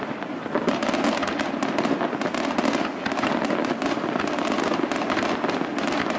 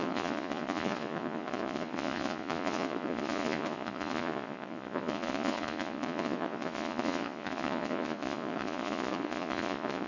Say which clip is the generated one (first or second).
second